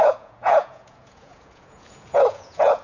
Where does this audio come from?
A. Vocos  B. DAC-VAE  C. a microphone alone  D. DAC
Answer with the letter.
A